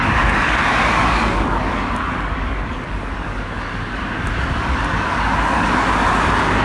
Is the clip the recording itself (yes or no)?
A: no